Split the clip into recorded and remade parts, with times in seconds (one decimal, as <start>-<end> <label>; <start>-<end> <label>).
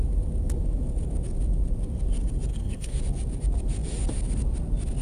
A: 0.0-2.5 recorded; 2.5-3.0 remade; 3.0-5.0 recorded